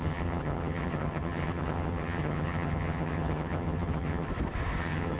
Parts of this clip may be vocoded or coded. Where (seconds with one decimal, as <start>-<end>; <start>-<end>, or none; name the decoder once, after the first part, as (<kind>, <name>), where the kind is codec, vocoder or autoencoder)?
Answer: 0.0-4.3 (vocoder, HiFi-GAN); 4.8-5.2